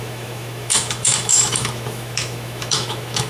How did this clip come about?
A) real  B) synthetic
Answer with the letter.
B